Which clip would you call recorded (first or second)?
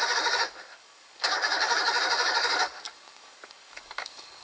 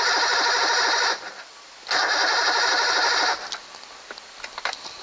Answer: second